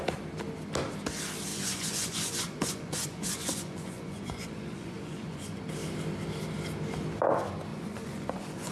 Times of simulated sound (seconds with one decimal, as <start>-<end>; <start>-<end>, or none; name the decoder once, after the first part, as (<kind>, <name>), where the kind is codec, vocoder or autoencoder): 1.5-5.6 (vocoder, Vocos); 7.7-8.7

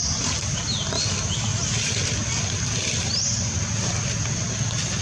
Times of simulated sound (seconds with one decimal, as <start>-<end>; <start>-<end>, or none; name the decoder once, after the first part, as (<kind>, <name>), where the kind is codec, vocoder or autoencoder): 0.0-5.0 (vocoder, BigVGAN v2)

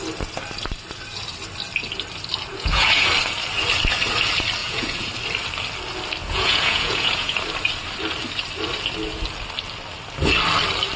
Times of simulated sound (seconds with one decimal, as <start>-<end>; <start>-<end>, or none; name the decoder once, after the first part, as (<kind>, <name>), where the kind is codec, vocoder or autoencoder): 2.5-3.1 (vocoder, Vocos); 4.6-5.1; 6.2-7.4

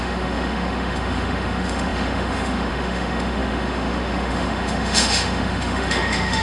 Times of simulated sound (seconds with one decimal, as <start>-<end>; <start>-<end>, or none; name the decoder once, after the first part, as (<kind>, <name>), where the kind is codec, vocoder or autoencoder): 0.0-6.4 (autoencoder, DAC-VAE)

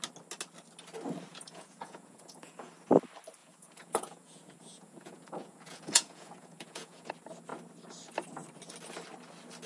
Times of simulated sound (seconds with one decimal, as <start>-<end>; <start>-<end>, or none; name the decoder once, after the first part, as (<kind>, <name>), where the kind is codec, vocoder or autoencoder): 1.3-2.7 (vocoder, Vocos); 3.4-7.1